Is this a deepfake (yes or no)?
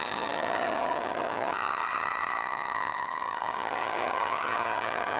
yes